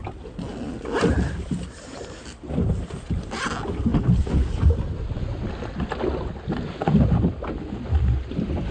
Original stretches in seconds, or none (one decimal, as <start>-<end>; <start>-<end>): 0.0-8.7